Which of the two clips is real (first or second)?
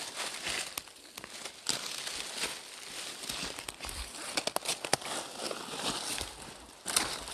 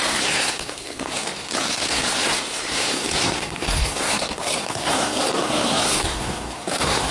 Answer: first